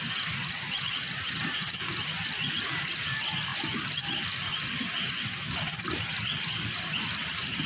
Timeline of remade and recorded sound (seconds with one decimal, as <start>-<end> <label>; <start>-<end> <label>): 0.0-7.7 recorded